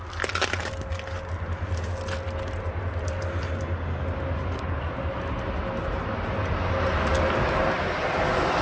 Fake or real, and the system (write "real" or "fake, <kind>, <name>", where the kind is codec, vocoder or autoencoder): real